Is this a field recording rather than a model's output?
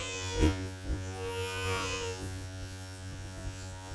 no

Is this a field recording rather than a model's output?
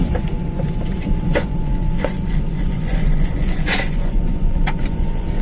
no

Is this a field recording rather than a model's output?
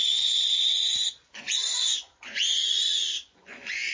no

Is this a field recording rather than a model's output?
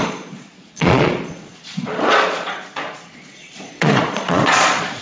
no